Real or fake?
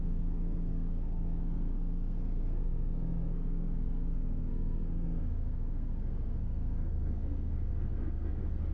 fake